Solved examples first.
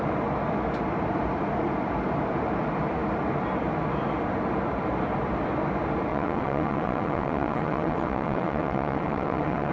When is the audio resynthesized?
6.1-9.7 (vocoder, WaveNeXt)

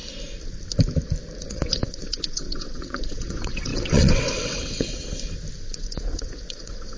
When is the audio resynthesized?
1.4-5.0 (vocoder, WaveNeXt); 5.6-7.0

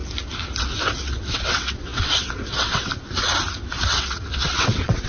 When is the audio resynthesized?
0.9-2.9 (vocoder, WaveNeXt); 3.9-5.1

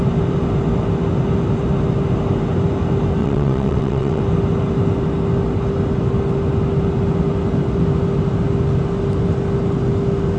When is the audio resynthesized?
3.2-4.2 (vocoder, WaveNeXt)

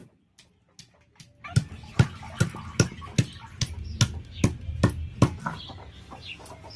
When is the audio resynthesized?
none

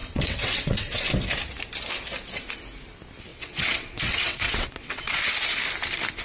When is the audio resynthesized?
0.0-1.1 (vocoder, WaveNeXt); 3.3-5.4